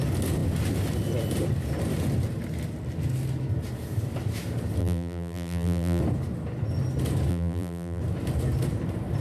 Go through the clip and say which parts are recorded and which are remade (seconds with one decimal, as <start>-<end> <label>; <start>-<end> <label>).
0.0-4.8 recorded; 4.8-6.0 remade; 6.0-7.3 recorded; 7.3-8.0 remade; 8.0-9.2 recorded